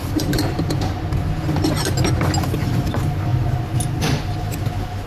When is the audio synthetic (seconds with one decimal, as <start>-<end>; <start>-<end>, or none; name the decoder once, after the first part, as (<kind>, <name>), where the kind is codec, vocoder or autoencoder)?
none